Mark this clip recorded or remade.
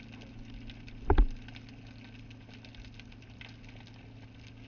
recorded